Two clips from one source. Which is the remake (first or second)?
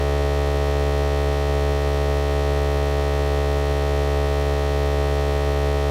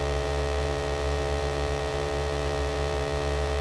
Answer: second